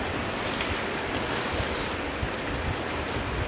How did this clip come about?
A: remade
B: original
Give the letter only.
B